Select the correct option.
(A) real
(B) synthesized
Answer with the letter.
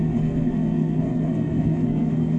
B